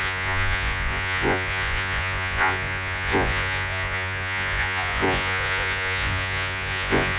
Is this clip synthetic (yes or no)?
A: yes